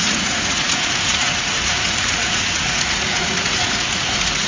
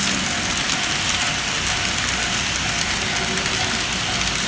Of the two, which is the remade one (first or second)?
first